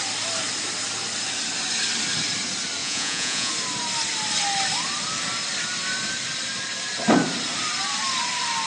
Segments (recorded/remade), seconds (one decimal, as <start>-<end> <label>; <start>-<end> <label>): 0.0-2.8 recorded; 2.8-3.5 remade; 3.5-8.7 recorded